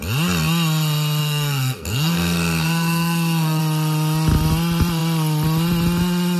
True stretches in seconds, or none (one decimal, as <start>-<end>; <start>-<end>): 0.0-1.2; 3.6-6.4